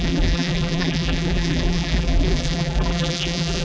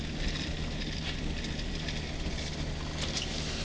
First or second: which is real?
second